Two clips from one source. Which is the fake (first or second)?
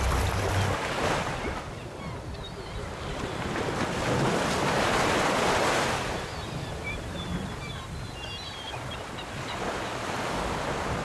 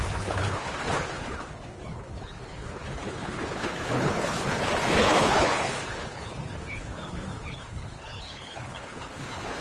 second